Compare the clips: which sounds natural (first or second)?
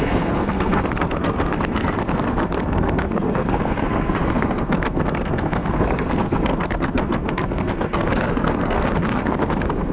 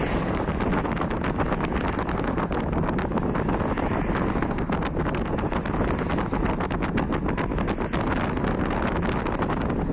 second